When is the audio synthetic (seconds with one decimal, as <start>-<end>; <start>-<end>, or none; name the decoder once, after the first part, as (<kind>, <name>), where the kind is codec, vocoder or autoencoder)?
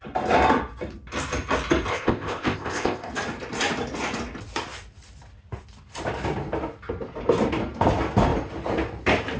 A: 1.9-3.1 (codec, ZipCodec)